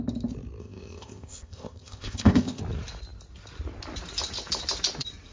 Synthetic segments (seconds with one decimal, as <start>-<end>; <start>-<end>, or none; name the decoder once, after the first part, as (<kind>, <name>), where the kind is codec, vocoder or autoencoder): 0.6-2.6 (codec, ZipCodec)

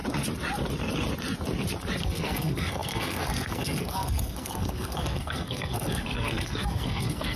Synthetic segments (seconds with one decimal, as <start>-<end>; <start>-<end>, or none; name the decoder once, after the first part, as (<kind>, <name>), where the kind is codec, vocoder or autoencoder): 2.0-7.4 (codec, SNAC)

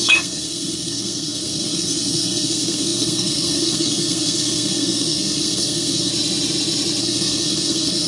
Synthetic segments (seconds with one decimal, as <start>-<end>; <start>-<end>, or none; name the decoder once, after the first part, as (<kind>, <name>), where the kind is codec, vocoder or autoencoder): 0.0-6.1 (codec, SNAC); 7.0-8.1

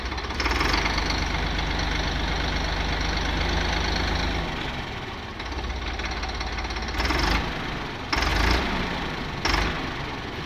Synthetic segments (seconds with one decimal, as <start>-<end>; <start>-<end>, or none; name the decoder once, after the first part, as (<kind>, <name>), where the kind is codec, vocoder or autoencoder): 8.3-9.2 (vocoder, BigVGAN v2)

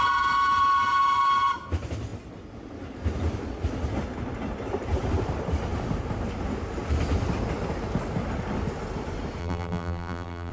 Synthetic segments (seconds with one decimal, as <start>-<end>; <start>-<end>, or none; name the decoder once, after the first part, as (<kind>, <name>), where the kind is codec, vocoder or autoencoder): 9.4-10.5 (vocoder, BigVGAN v2)